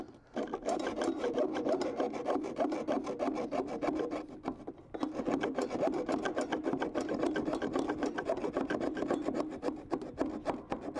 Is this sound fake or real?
real